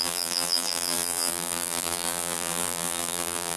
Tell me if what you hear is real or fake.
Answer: fake